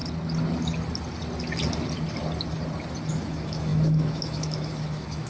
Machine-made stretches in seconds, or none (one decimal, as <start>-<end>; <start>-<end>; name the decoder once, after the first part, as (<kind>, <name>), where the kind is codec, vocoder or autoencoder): 3.1-5.3 (autoencoder, DAC-VAE)